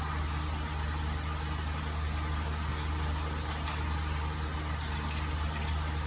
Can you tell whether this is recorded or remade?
recorded